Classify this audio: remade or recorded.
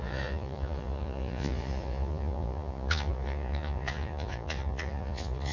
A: remade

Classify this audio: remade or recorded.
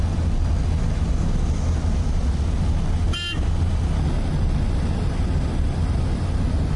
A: recorded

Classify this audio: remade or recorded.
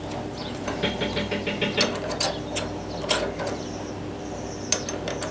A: recorded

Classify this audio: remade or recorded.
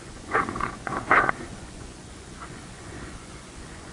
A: remade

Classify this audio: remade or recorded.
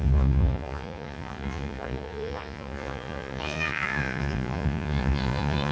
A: remade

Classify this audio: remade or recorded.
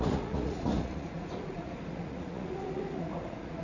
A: remade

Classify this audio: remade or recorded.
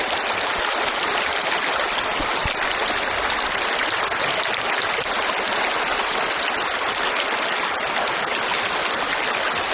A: recorded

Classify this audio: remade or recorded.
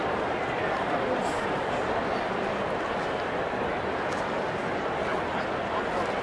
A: recorded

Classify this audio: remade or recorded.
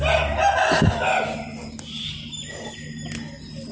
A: recorded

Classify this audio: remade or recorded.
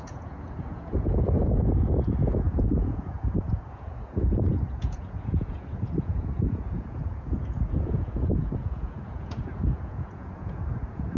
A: remade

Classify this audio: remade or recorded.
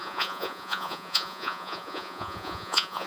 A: remade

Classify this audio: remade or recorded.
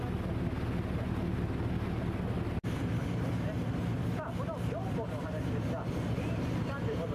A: recorded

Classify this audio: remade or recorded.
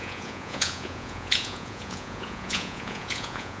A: remade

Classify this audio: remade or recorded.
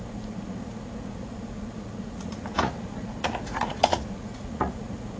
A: remade